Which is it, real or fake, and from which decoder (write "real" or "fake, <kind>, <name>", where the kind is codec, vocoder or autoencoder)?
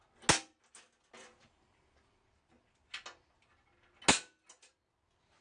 real